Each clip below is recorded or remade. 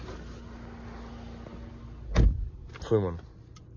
recorded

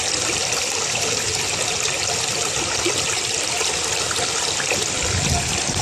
recorded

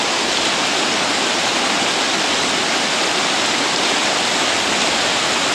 recorded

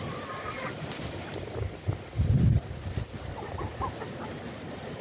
recorded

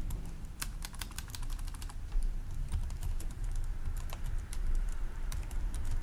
remade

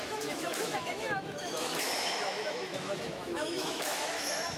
remade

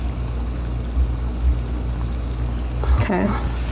recorded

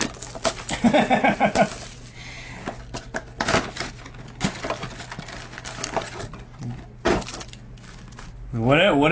recorded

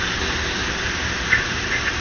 recorded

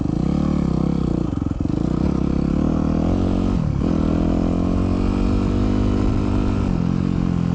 recorded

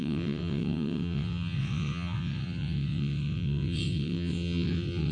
remade